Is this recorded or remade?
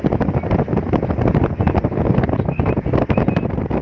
recorded